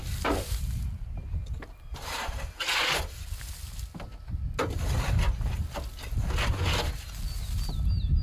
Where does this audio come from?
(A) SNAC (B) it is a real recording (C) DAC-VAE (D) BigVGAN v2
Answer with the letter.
B